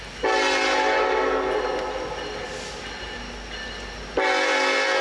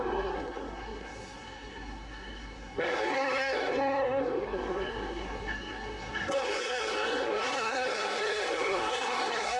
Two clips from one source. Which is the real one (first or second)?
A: first